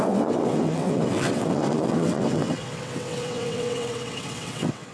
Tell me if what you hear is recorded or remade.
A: remade